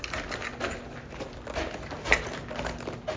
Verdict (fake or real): real